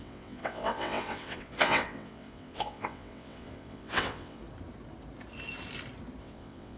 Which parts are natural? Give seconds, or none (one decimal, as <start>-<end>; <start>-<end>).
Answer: 4.4-6.2